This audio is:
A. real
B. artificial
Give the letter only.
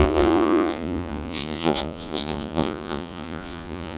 B